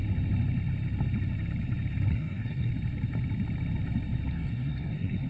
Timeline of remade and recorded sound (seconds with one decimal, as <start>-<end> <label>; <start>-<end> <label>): 0.0-2.1 recorded; 2.1-2.7 remade; 2.7-4.3 recorded; 4.3-5.3 remade

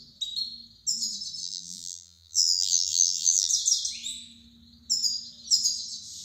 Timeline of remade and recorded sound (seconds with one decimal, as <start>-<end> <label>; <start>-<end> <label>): 0.0-1.4 recorded; 1.4-3.5 remade; 3.5-6.2 recorded

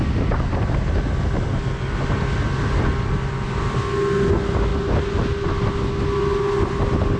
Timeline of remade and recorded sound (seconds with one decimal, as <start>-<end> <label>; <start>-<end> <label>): 0.0-7.2 recorded

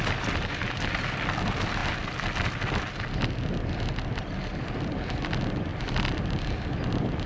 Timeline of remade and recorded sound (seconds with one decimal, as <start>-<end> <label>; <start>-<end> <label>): 0.0-5.7 recorded; 5.7-6.6 remade; 6.6-7.3 recorded

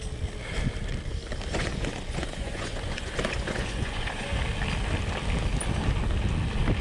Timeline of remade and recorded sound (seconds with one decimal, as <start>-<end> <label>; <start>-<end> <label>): 0.0-1.5 recorded; 1.5-4.4 remade; 4.4-6.8 recorded

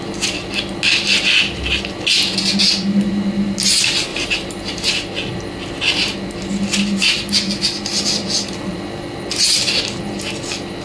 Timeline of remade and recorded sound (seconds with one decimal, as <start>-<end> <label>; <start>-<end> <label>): 0.0-4.1 recorded; 4.1-4.9 remade; 4.9-10.8 recorded

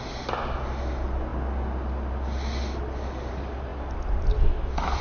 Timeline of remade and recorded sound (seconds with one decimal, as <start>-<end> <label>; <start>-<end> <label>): 0.0-5.0 recorded